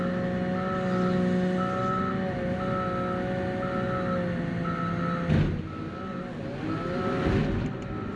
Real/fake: real